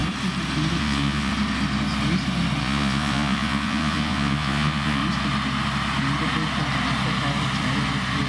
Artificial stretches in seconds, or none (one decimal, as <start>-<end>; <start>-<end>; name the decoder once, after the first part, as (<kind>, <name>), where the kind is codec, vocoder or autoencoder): 0.8-1.3 (vocoder, Vocos); 2.6-5.0